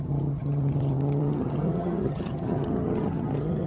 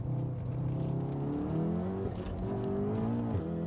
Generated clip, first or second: first